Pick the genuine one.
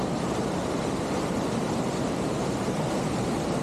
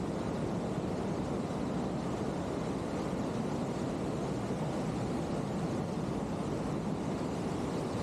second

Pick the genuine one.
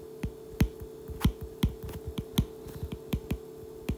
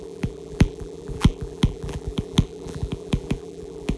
first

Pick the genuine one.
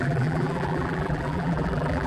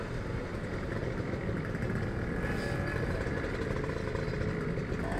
second